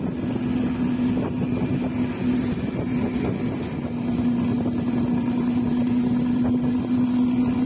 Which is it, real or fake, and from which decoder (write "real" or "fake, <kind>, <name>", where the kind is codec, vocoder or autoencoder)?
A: real